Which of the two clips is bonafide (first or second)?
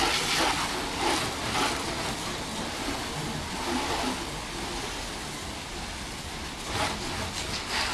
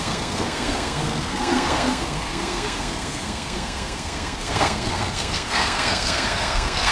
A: first